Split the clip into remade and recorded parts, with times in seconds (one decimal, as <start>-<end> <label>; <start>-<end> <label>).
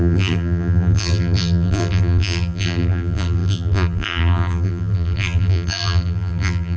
0.0-6.8 remade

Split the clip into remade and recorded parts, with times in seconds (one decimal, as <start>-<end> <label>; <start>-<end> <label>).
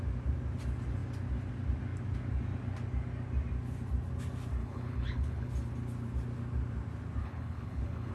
0.0-4.6 recorded; 4.6-5.5 remade; 5.5-7.2 recorded; 7.2-8.1 remade